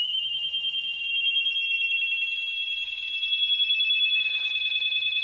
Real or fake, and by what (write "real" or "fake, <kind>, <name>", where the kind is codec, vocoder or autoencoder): fake, autoencoder, DAC-VAE